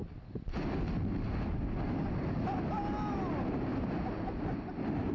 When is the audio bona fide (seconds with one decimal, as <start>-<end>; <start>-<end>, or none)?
0.0-5.1